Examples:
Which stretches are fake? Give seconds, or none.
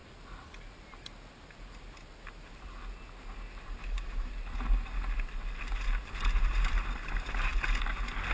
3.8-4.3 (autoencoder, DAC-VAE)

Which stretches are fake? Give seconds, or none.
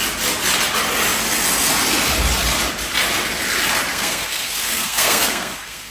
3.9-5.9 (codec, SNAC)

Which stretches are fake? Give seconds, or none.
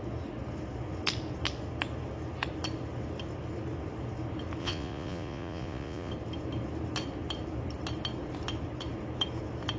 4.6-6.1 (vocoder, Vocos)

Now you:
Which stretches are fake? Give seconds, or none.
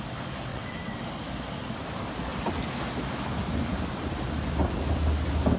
0.5-1.0 (vocoder, WaveNeXt)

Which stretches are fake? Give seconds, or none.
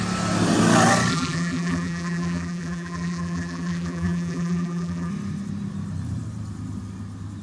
1.1-5.1 (vocoder, BigVGAN v2)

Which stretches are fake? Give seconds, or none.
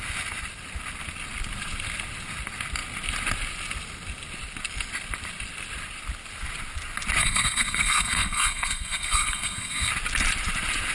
7.2-9.9 (codec, SNAC)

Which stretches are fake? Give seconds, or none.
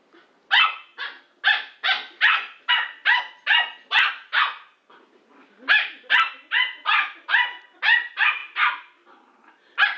none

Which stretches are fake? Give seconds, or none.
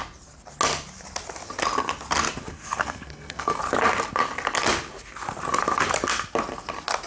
2.5-3.6 (codec, SNAC)